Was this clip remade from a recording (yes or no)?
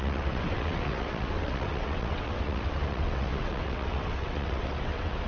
yes